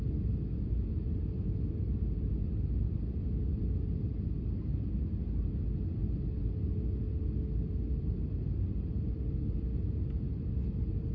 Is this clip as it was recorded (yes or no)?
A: yes